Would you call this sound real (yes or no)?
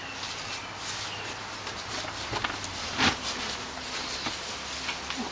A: yes